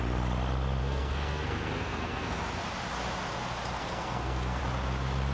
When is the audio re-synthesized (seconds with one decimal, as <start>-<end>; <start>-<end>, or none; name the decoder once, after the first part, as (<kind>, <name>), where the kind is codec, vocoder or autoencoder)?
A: 0.8-2.4 (codec, SNAC); 3.8-4.6